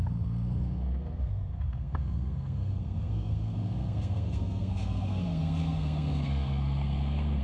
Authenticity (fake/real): fake